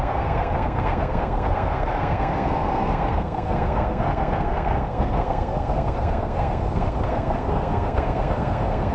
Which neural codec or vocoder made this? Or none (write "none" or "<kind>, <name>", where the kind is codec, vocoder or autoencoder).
codec, SNAC